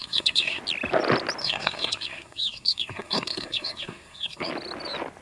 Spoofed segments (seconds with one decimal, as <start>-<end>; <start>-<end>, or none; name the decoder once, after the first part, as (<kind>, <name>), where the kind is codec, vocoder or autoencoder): 0.0-0.6 (codec, SNAC); 1.4-4.5